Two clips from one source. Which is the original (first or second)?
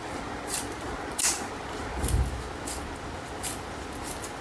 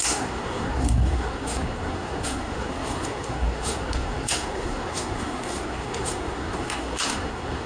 first